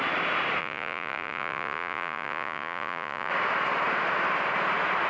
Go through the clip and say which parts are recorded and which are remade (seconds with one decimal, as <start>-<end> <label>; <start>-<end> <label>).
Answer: 0.0-0.6 recorded; 0.6-3.3 remade; 3.3-5.1 recorded